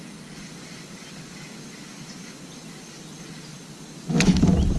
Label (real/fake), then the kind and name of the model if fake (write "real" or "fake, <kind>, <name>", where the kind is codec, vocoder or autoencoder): real